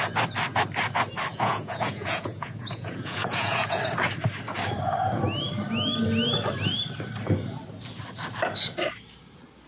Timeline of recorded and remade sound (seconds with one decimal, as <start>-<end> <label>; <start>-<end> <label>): 0.0-1.3 recorded; 1.3-3.8 remade; 3.8-9.7 recorded